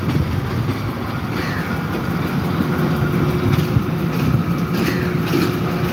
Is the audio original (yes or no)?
yes